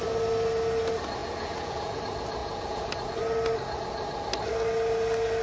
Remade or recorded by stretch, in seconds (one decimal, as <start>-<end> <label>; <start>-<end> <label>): 0.0-1.2 recorded; 1.2-2.0 remade; 2.0-2.4 recorded; 2.4-2.9 remade; 2.9-5.4 recorded